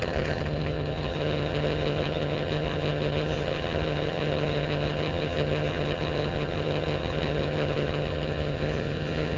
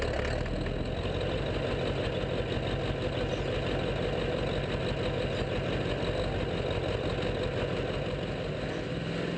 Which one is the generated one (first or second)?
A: first